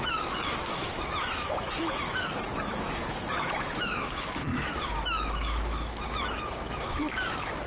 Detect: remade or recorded remade